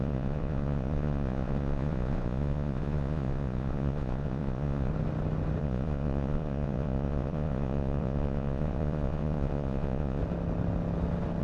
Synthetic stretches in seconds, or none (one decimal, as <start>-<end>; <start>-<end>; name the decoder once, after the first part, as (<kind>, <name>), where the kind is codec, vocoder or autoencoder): 0.0-4.9 (vocoder, Vocos); 5.6-10.2